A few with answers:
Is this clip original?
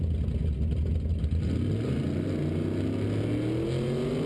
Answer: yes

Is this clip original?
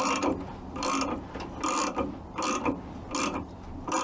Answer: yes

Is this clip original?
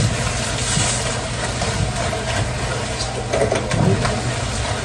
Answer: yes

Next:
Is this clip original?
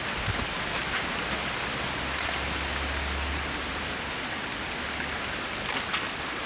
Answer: yes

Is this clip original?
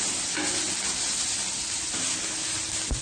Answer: yes